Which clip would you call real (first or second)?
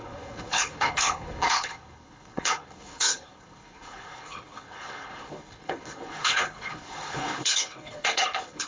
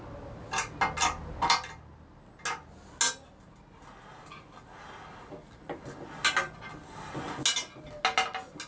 second